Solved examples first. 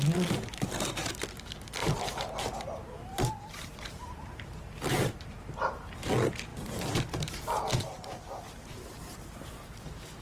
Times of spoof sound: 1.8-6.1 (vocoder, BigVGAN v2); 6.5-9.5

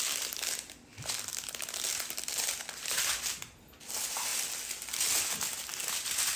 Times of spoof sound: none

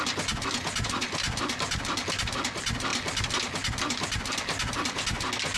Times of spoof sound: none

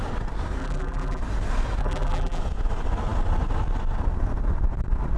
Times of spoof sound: 0.6-1.2 (vocoder, BigVGAN v2); 1.8-2.4

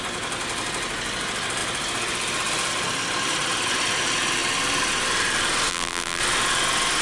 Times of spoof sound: 5.7-6.2 (vocoder, BigVGAN v2)

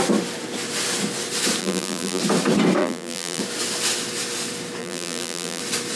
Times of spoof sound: 1.6-2.2 (vocoder, BigVGAN v2); 2.8-3.4; 4.8-5.6